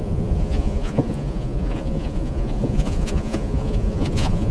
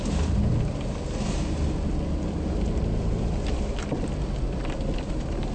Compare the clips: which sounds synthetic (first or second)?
first